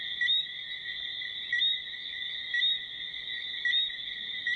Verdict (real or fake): real